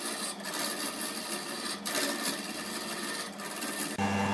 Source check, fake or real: real